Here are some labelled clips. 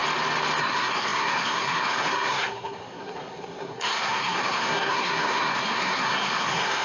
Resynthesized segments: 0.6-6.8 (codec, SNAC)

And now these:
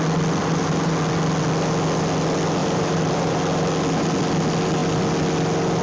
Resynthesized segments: 0.4-0.9 (vocoder, BigVGAN v2); 2.6-3.4

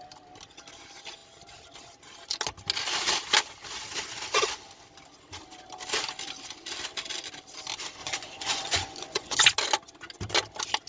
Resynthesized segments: 8.0-9.4 (vocoder, Vocos)

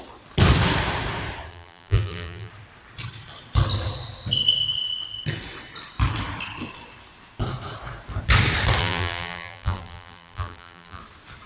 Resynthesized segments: 1.5-2.5 (vocoder, BigVGAN v2); 8.8-11.0

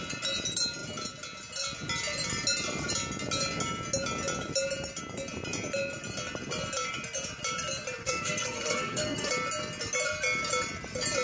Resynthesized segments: 8.0-9.3 (codec, SNAC)

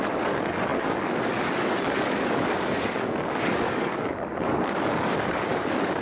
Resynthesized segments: 0.0-6.0 (codec, DAC)

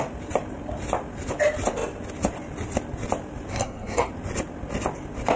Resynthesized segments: 3.5-4.1 (codec, SNAC)